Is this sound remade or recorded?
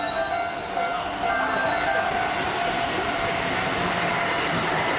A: recorded